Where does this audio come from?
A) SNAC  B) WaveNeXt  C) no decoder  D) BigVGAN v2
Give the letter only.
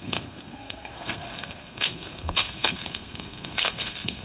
A